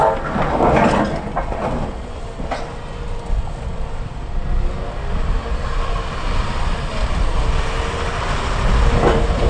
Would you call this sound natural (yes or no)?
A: yes